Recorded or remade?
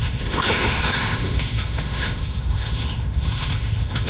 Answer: remade